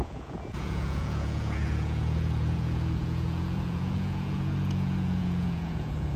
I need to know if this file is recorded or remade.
remade